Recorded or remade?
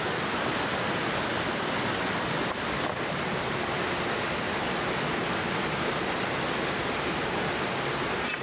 recorded